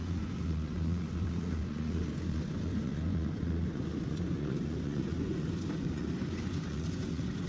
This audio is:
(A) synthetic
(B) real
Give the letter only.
A